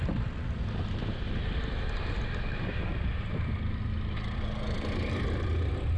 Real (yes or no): no